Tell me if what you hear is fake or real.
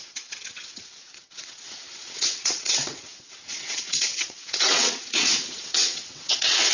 fake